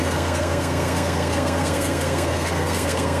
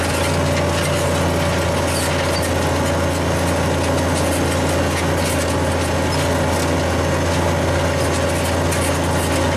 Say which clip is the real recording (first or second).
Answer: second